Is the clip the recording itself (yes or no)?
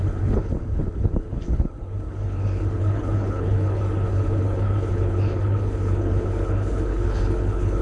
no